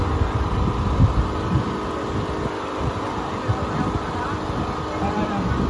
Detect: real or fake real